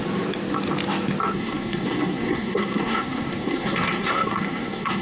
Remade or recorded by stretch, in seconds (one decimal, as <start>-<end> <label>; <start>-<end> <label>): 0.0-1.3 recorded; 1.3-5.0 remade